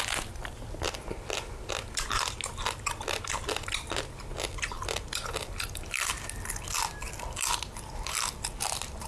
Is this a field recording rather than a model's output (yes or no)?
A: yes